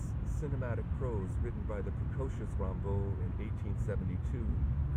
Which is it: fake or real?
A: real